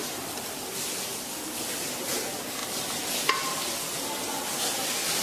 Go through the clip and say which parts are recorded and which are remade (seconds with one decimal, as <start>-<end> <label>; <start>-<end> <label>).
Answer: 0.0-5.2 recorded